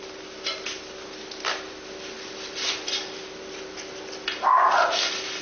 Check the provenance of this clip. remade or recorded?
recorded